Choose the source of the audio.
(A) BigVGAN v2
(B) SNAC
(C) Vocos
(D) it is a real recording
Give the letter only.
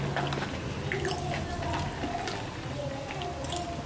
D